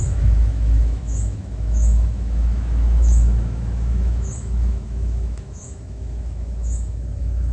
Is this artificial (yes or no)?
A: yes